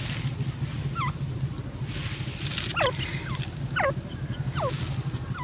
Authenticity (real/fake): real